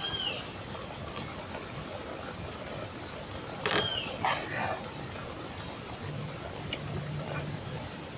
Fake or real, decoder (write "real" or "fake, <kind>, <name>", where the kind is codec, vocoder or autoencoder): real